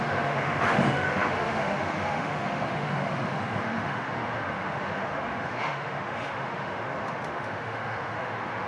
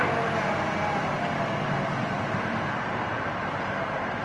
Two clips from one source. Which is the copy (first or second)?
first